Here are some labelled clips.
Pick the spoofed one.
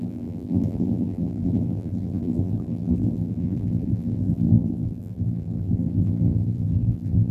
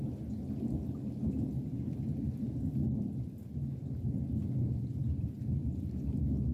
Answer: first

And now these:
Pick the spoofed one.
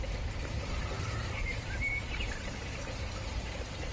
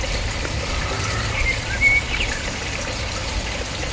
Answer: first